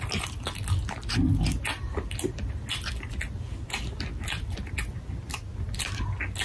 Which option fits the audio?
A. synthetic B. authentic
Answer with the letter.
B